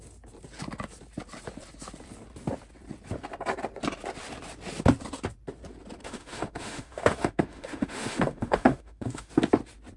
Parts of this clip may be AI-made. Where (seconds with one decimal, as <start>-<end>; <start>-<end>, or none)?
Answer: 6.0-9.3